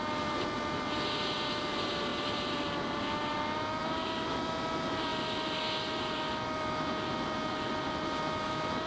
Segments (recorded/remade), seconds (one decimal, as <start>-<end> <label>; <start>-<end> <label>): 0.0-2.1 recorded; 2.1-3.1 remade; 3.1-3.8 recorded; 3.8-4.5 remade; 4.5-8.9 recorded